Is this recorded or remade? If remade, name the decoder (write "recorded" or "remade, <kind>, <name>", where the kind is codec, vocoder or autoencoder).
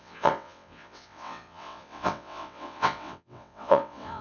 remade, vocoder, WaveNeXt